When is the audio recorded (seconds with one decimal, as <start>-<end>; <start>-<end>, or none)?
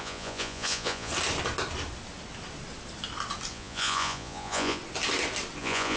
1.1-3.5; 4.8-5.6